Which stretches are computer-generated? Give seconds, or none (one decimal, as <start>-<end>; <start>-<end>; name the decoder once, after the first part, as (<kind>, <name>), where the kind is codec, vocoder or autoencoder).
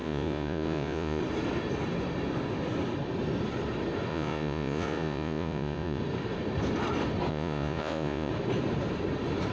0.0-1.2 (vocoder, Vocos); 4.1-6.0; 7.3-8.3